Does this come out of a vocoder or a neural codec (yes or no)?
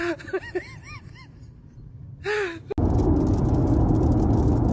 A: no